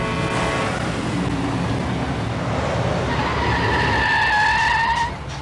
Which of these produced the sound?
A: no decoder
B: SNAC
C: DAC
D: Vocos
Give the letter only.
A